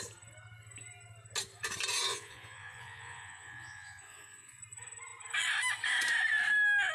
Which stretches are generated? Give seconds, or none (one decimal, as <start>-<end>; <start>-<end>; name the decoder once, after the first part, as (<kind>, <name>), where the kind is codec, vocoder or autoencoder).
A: 2.1-4.6 (vocoder, Vocos)